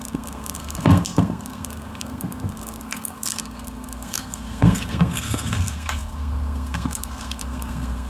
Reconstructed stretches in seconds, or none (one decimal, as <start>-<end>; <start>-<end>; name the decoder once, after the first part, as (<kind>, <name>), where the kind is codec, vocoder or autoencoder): 0.0-8.1 (codec, SNAC)